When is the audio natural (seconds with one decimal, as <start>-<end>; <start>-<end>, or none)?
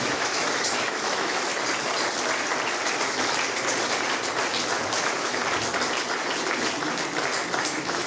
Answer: 1.5-5.0; 5.4-7.6